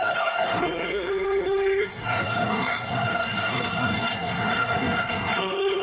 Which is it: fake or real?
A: fake